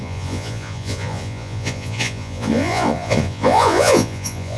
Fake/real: fake